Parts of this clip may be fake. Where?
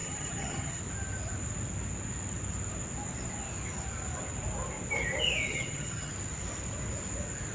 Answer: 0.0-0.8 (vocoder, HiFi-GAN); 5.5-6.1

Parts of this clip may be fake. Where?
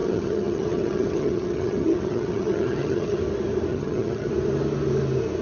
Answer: 0.0-3.2 (vocoder, HiFi-GAN); 3.7-4.3